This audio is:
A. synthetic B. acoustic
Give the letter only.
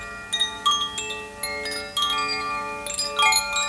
B